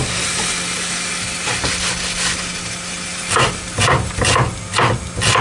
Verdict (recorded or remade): recorded